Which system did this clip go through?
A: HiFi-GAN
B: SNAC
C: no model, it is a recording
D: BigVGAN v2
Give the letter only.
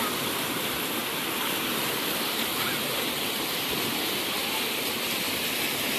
C